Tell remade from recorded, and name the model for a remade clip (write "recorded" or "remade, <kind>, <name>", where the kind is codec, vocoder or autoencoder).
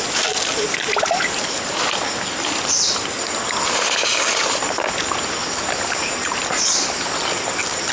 recorded